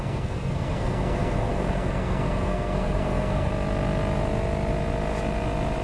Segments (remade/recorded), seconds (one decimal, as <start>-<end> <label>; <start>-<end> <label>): 0.0-3.5 remade; 3.5-5.8 recorded